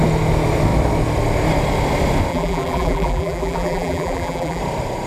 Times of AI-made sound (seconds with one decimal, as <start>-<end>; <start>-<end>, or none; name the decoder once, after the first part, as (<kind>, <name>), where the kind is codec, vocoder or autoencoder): 2.3-4.6 (vocoder, BigVGAN v2)